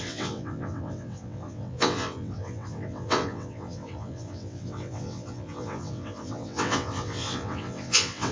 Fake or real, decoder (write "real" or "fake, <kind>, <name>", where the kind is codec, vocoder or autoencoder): fake, vocoder, WaveNeXt